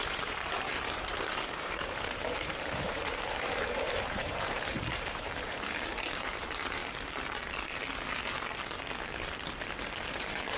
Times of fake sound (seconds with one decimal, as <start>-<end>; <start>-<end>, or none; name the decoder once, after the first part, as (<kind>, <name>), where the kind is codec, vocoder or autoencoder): 0.0-6.8 (vocoder, BigVGAN v2); 10.1-10.6